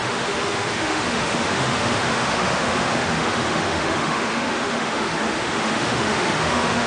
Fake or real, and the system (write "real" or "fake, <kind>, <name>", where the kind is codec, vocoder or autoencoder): fake, autoencoder, DAC-VAE